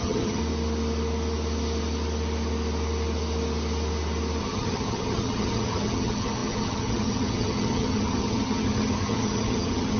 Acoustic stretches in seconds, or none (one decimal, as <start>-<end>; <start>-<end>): 0.4-4.4